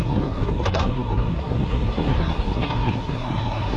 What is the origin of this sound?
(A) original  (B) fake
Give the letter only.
B